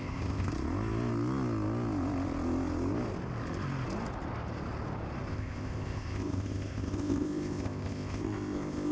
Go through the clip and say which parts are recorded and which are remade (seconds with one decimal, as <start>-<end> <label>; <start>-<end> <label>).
0.0-0.5 remade; 0.5-5.3 recorded; 5.3-8.9 remade